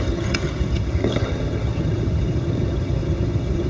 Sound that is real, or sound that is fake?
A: fake